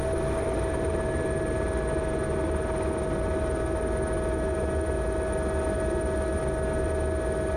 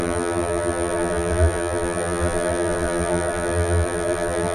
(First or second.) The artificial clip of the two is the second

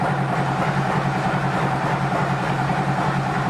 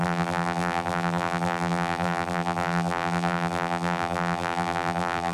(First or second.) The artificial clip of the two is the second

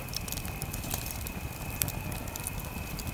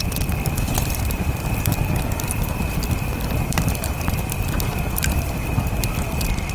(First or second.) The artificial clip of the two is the second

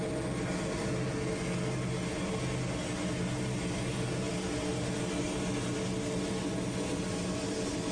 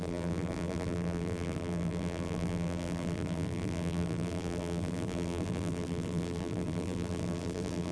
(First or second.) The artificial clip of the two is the second